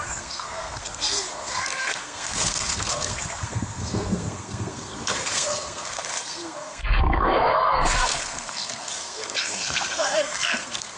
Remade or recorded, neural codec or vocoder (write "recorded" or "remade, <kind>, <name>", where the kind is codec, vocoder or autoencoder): remade, codec, SNAC